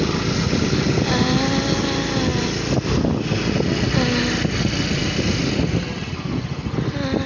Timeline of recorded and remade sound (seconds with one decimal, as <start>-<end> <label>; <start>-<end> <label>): 0.0-7.3 recorded